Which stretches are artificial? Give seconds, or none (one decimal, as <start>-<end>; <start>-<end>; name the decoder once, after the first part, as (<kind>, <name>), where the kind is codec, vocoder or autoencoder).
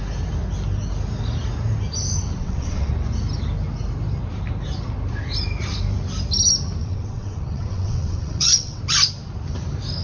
2.4-2.9 (vocoder, WaveNeXt); 6.8-8.8